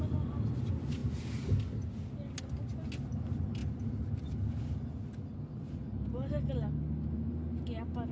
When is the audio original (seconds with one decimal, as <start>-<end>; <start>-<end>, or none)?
0.0-8.1